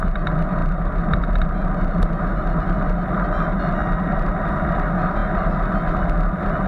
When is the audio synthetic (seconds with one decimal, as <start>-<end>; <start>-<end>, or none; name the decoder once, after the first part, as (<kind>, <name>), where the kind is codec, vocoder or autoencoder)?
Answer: none